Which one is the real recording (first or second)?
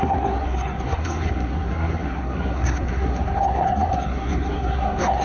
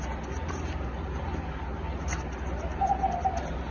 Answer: second